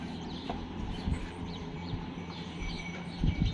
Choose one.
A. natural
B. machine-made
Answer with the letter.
B